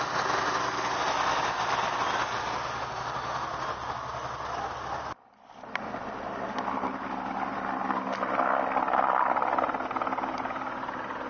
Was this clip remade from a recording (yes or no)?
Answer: no